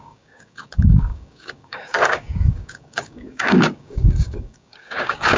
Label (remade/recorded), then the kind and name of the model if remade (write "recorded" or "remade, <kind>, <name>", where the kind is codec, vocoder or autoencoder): remade, codec, DAC